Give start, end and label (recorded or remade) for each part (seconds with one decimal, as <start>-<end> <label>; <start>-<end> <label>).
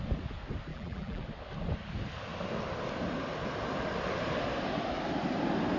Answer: 0.0-0.7 recorded; 0.7-1.2 remade; 1.2-5.8 recorded